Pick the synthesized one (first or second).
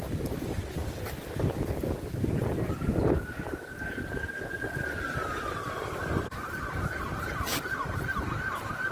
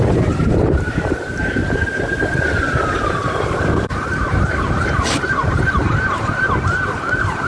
second